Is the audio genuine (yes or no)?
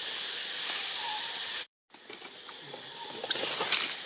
no